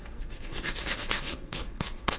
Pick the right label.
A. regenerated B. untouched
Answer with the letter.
A